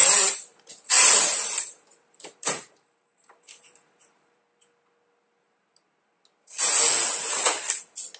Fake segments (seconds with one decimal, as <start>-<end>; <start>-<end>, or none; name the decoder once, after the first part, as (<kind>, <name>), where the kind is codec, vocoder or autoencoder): 0.0-4.4 (vocoder, BigVGAN v2)